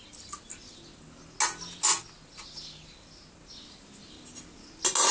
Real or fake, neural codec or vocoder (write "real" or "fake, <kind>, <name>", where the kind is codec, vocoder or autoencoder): real